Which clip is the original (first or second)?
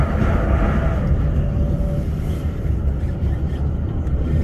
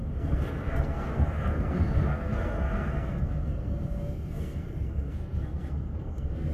first